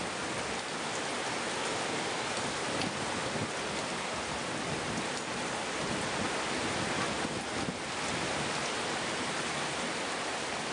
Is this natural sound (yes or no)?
yes